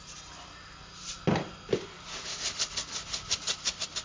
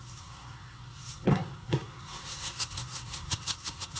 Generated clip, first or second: second